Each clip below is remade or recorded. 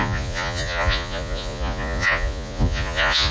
remade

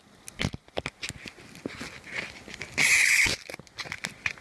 recorded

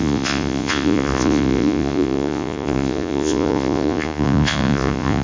remade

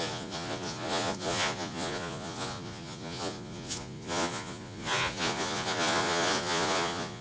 remade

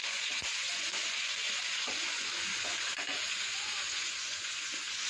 remade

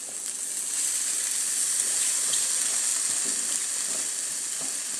recorded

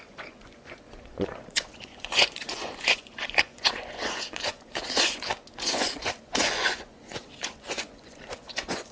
remade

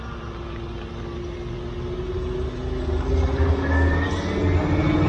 recorded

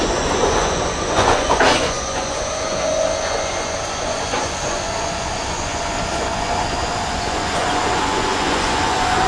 remade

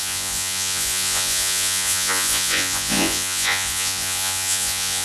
remade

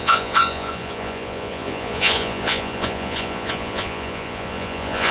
remade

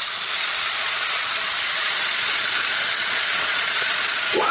remade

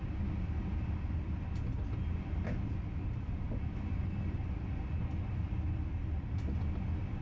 recorded